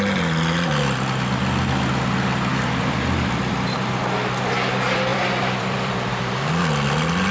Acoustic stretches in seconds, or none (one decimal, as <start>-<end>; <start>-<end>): 0.0-2.5; 4.0-5.1; 6.5-7.3